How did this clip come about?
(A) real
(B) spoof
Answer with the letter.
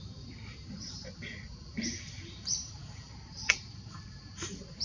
B